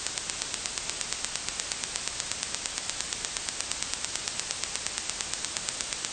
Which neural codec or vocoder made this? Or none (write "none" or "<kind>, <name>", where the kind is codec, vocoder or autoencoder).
none